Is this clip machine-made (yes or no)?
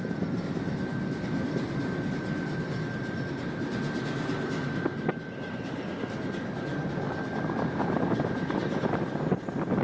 no